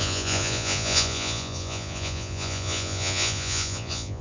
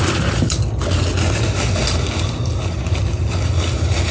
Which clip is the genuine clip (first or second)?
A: second